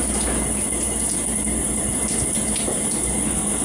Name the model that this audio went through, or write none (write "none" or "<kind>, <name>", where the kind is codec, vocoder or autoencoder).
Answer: none